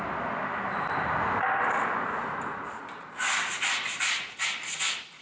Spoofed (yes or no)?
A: no